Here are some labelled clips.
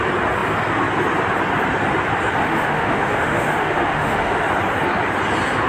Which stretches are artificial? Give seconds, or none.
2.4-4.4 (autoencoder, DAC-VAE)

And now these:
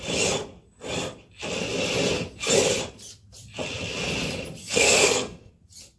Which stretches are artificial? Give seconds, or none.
4.6-5.5 (codec, SNAC)

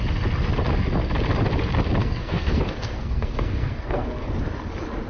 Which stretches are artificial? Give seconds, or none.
2.0-4.3 (codec, SNAC)

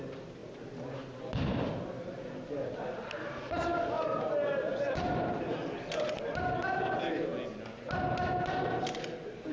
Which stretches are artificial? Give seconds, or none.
none

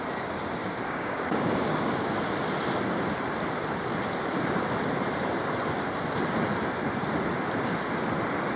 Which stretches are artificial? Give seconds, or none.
0.6-2.2 (codec, DAC)